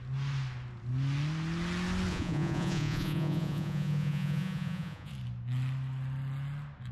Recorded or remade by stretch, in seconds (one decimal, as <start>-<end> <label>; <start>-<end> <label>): 0.0-2.1 recorded; 2.1-5.1 remade; 5.1-6.9 recorded

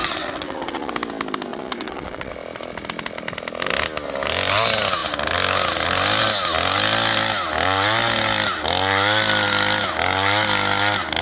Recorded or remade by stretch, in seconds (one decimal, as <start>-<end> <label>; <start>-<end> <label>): 0.0-0.9 remade; 0.9-1.5 recorded; 1.5-2.3 remade; 2.3-11.2 recorded